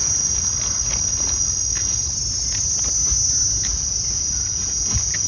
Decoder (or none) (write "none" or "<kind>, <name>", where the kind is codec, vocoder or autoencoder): none